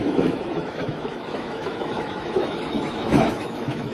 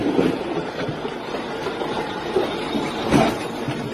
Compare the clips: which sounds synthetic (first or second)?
first